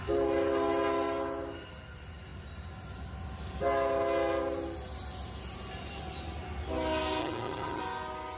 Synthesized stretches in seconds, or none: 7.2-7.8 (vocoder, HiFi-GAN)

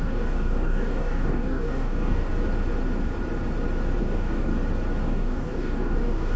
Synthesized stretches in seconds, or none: 0.0-2.3 (codec, DAC); 4.0-4.5; 5.0-6.4

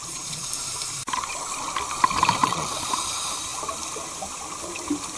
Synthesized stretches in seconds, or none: 0.0-0.5 (vocoder, Vocos); 2.4-2.9